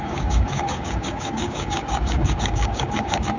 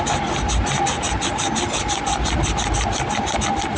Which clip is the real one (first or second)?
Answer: second